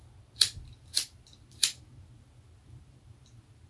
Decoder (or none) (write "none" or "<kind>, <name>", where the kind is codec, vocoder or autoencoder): none